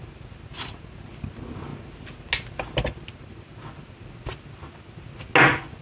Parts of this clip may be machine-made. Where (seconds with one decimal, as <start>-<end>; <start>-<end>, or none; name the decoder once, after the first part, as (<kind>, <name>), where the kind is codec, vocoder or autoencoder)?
none